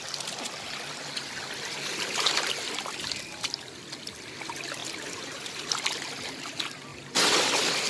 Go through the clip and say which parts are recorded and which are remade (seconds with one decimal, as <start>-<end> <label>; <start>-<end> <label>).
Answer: 0.0-4.8 recorded; 4.8-5.7 remade; 5.7-7.9 recorded